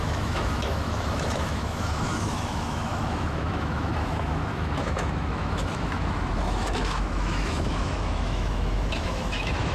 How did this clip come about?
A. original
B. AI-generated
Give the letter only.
B